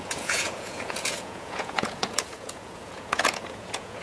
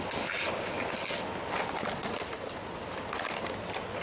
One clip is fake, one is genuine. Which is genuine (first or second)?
second